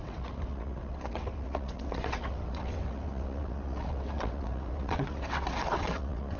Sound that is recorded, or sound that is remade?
remade